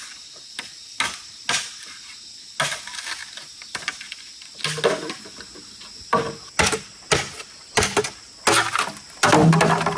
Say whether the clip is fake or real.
real